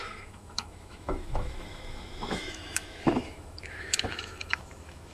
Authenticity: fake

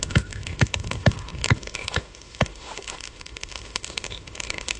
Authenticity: fake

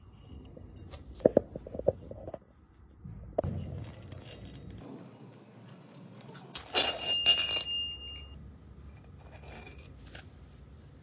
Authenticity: real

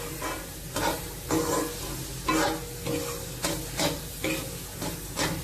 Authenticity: real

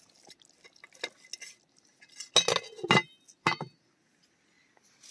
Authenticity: real